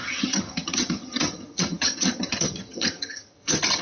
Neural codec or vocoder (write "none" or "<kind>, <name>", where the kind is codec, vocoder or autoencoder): vocoder, HiFi-GAN